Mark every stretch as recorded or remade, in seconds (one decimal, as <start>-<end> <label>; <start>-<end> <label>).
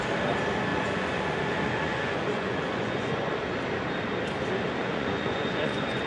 0.0-0.7 recorded; 0.7-3.4 remade; 3.4-4.8 recorded; 4.8-6.1 remade